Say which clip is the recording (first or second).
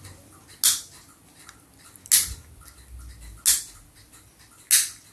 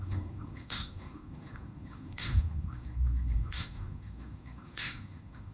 first